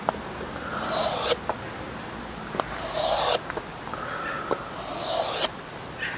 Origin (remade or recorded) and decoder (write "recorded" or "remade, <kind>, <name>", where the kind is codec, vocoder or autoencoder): recorded